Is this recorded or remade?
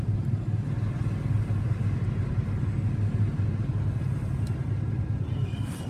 recorded